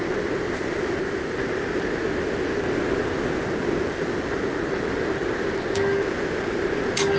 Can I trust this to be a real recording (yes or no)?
yes